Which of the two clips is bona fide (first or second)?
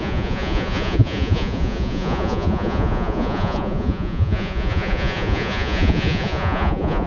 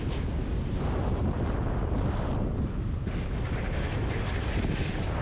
second